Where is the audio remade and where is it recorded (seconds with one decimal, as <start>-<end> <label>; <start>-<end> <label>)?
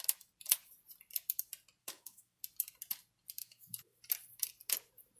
0.0-1.8 recorded; 1.8-2.4 remade; 2.4-3.4 recorded; 3.4-4.0 remade; 4.0-5.2 recorded